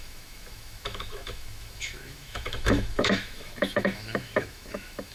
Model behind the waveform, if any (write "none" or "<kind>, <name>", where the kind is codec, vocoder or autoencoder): autoencoder, DAC-VAE